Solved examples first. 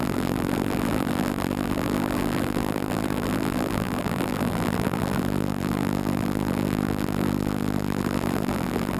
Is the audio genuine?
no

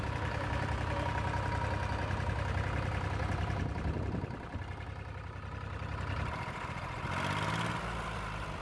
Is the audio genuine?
yes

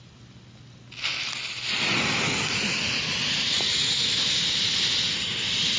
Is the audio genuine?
yes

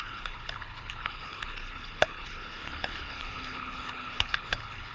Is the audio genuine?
no